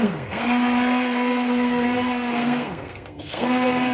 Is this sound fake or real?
fake